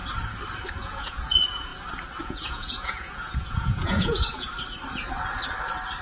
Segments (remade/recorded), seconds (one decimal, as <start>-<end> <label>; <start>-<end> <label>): 0.0-0.7 recorded; 0.7-1.7 remade; 1.7-2.2 recorded; 2.2-4.5 remade; 4.5-6.0 recorded